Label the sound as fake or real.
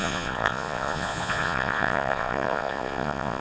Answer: fake